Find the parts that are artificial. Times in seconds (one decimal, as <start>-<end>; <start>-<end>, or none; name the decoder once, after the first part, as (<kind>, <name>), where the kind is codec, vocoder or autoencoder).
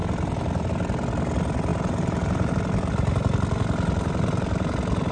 1.7-2.5 (vocoder, BigVGAN v2)